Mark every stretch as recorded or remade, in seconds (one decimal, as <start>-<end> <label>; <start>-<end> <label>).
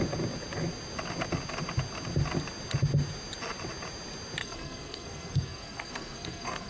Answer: 0.0-4.4 recorded; 4.4-6.7 remade